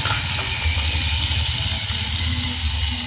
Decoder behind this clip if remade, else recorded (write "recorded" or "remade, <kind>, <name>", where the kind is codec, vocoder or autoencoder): recorded